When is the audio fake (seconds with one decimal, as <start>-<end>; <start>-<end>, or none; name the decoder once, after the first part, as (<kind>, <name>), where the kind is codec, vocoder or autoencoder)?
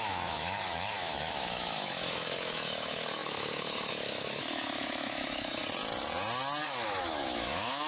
0.0-5.6 (autoencoder, DAC-VAE); 6.6-7.9